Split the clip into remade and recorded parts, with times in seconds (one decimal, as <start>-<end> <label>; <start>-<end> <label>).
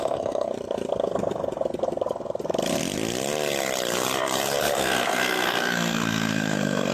0.0-0.5 remade; 0.5-4.6 recorded; 4.6-6.9 remade